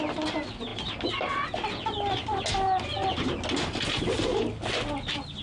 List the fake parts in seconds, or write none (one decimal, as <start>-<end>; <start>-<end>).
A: none